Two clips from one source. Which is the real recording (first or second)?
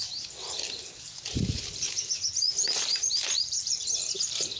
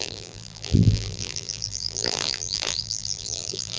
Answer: first